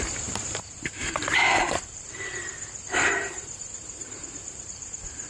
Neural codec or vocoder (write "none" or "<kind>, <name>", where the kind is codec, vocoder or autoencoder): vocoder, BigVGAN v2